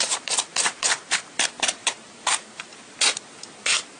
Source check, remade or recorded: remade